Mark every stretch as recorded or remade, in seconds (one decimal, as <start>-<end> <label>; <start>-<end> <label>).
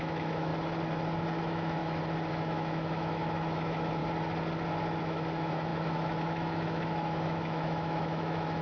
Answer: 0.0-0.5 remade; 0.5-1.4 recorded; 1.4-1.8 remade; 1.8-2.3 recorded; 2.3-4.0 remade; 4.0-5.0 recorded; 5.0-8.6 remade